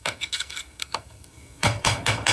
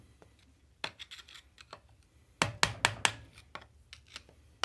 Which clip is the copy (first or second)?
first